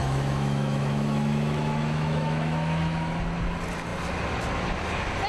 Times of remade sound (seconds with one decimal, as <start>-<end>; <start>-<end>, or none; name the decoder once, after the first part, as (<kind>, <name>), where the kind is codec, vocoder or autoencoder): 0.0-3.2 (autoencoder, DAC-VAE)